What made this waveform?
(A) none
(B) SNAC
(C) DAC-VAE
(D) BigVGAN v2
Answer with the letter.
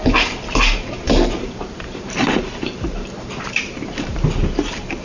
D